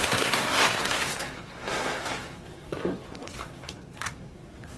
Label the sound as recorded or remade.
remade